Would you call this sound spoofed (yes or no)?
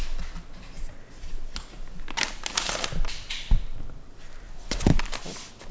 no